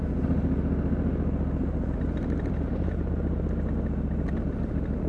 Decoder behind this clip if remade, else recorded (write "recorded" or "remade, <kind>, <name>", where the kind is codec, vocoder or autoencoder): recorded